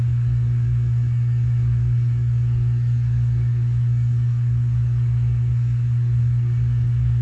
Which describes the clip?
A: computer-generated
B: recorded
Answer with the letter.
A